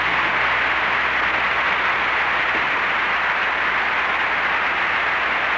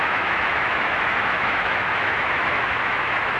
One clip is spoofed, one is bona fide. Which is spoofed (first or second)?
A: second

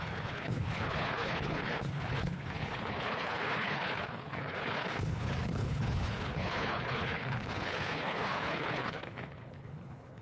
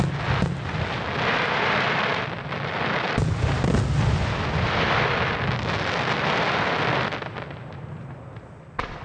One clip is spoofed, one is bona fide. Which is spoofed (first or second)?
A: first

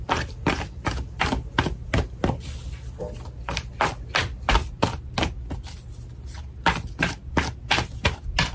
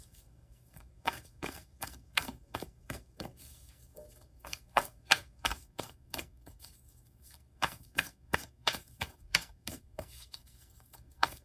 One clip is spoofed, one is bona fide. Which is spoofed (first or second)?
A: second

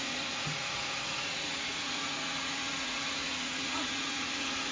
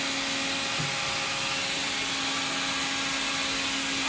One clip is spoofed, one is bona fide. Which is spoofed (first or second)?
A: first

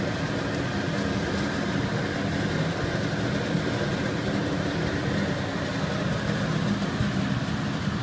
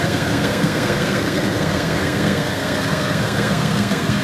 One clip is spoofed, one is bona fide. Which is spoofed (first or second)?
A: second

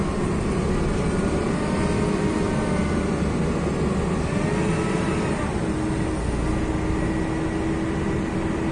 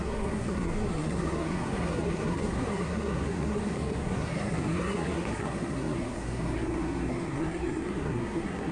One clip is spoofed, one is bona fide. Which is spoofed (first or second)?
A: second